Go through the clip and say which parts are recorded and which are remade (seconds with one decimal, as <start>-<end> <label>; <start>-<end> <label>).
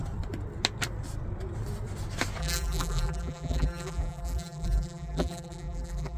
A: 0.0-2.4 recorded; 2.4-6.2 remade